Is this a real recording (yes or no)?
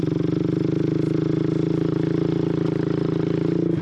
yes